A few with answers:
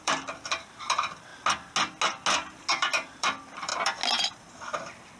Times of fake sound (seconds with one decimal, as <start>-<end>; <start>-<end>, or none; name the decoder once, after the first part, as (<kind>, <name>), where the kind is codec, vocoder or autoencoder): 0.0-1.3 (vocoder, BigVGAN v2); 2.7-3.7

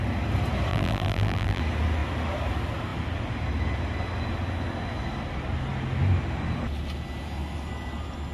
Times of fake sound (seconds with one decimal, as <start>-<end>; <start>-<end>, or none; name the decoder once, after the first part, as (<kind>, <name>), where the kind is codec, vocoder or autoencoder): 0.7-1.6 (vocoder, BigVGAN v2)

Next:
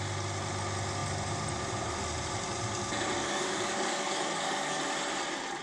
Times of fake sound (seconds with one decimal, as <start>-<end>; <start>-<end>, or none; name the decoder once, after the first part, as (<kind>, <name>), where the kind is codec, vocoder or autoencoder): 3.2-4.8 (codec, DAC)

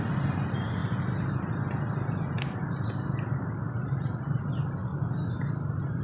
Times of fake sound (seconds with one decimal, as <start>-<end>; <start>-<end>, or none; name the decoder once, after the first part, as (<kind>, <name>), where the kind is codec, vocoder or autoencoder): none